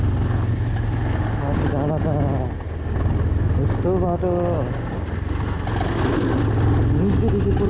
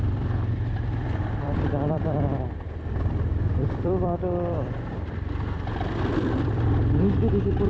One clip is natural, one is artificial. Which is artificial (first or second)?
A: second